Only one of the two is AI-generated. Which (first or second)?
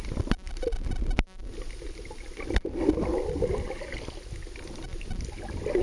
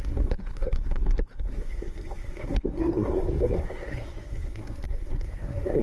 second